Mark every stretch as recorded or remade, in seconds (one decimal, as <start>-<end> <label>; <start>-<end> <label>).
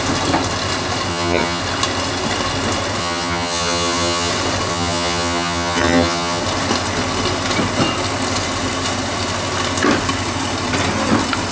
0.0-1.1 recorded; 1.1-1.6 remade; 1.6-3.0 recorded; 3.0-4.3 remade; 4.3-4.7 recorded; 4.7-6.4 remade; 6.4-11.5 recorded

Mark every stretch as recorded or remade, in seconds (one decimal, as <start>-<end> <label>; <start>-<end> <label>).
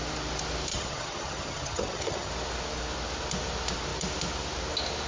0.0-0.7 recorded; 0.7-2.3 remade; 2.3-5.1 recorded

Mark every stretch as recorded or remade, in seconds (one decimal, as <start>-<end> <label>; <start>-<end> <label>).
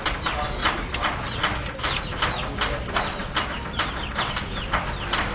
0.0-5.3 recorded